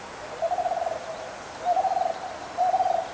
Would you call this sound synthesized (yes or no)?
no